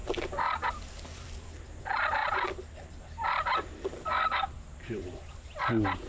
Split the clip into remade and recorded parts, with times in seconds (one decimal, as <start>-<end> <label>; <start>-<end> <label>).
0.0-6.1 remade

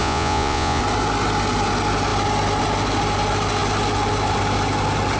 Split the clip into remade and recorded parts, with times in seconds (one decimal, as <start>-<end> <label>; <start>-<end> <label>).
0.0-0.8 remade; 0.8-5.2 recorded

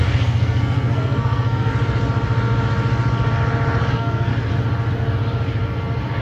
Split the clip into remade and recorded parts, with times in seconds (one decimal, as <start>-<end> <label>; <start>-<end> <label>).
0.0-1.7 remade; 1.7-3.9 recorded; 3.9-4.3 remade; 4.3-6.2 recorded

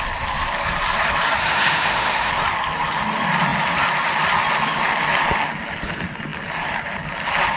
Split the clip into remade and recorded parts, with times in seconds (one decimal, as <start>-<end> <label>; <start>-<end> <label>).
0.0-1.4 recorded; 1.4-2.3 remade; 2.3-7.6 recorded

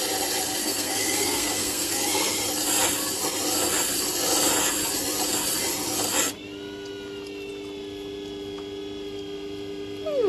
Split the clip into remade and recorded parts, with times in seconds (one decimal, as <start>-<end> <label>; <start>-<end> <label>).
0.0-0.6 recorded; 0.6-2.3 remade; 2.3-10.3 recorded